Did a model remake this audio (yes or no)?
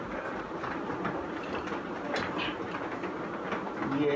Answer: no